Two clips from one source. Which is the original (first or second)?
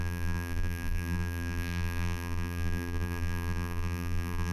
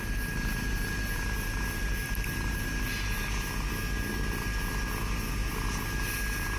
second